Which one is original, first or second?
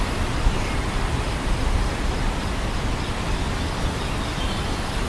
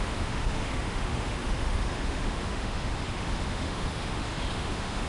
first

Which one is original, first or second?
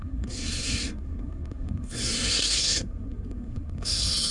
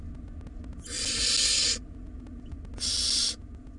second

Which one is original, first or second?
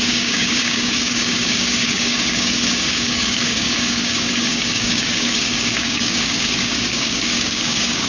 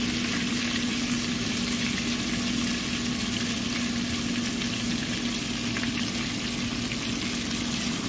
second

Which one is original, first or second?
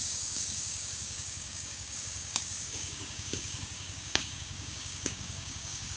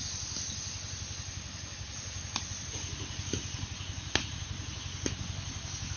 second